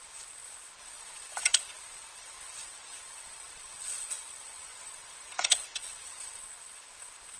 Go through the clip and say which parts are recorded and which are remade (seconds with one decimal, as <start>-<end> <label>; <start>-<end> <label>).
0.0-7.4 remade